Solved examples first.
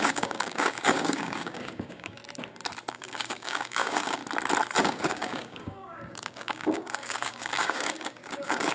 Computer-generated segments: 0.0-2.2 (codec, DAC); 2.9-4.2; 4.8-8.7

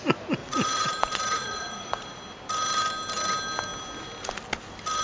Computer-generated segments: 0.4-2.2 (vocoder, Vocos)

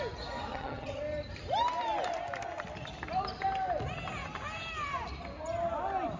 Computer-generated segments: 0.5-1.0 (vocoder, HiFi-GAN)